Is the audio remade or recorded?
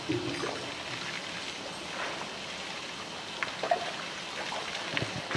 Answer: recorded